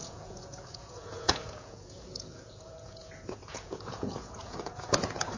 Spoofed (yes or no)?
yes